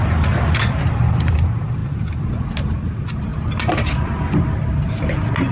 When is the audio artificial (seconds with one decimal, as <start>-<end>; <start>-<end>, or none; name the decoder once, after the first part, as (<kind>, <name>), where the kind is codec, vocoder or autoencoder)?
none